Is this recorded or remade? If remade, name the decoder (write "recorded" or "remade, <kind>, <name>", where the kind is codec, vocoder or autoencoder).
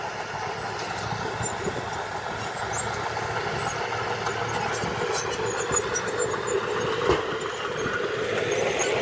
recorded